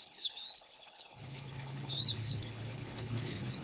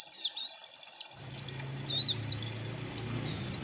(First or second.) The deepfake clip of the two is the first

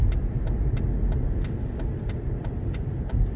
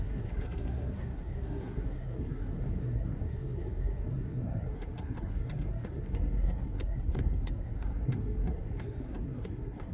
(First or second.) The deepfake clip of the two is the second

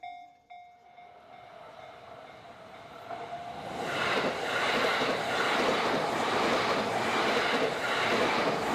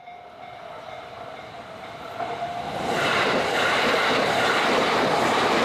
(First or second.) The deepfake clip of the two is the second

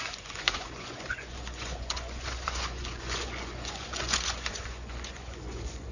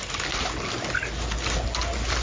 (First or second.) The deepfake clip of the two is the first